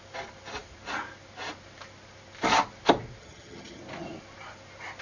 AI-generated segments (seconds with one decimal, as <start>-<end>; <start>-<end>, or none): 3.2-3.8